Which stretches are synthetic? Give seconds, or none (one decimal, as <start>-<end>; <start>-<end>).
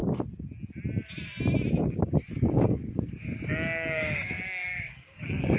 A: 2.5-5.6